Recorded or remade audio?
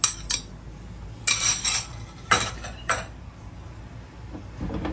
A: recorded